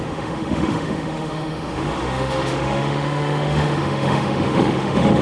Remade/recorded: remade